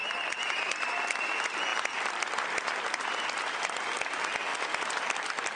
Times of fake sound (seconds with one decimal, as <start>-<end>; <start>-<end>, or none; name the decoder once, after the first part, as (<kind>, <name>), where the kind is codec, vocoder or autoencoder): none

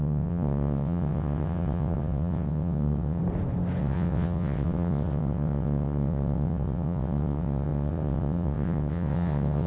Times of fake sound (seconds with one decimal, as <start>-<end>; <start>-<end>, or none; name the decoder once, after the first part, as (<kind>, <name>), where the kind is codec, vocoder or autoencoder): 0.0-3.2 (vocoder, WaveNeXt); 3.8-9.7

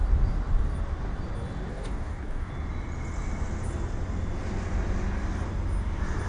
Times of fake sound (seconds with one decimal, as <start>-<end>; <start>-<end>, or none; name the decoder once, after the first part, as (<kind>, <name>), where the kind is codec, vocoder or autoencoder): 1.7-2.5 (codec, DAC)

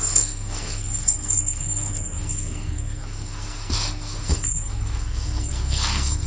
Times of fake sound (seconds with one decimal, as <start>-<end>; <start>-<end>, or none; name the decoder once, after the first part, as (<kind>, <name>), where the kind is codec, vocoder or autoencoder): 0.0-6.3 (codec, SNAC)